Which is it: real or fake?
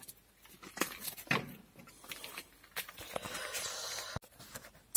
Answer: real